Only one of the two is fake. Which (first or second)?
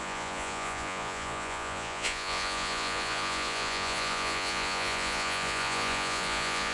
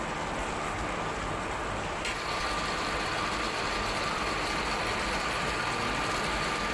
first